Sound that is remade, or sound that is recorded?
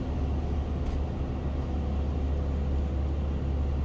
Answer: recorded